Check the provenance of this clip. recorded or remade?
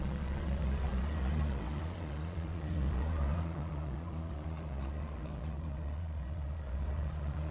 remade